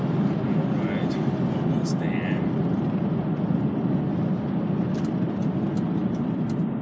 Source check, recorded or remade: recorded